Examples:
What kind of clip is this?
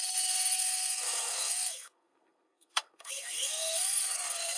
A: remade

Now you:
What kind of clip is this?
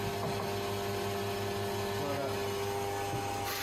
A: recorded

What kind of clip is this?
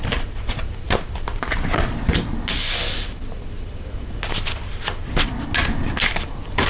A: recorded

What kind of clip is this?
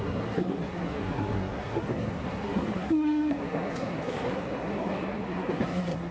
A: remade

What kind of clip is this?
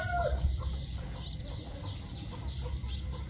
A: recorded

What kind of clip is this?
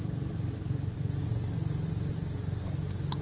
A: recorded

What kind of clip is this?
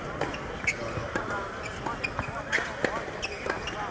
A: recorded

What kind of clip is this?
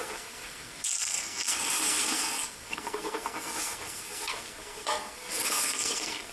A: remade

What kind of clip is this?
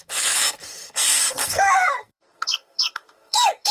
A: remade